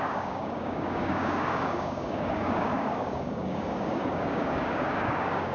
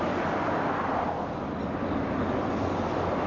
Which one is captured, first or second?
second